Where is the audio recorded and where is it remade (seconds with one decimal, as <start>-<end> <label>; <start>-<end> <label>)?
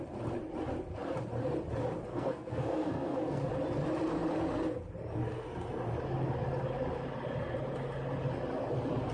0.0-2.1 recorded; 2.1-3.5 remade; 3.5-9.1 recorded